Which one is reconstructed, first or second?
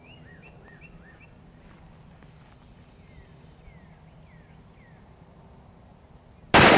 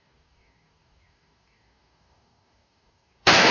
second